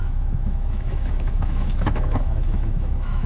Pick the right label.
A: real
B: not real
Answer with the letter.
B